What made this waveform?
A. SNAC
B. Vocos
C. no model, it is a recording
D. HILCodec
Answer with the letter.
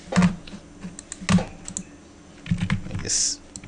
C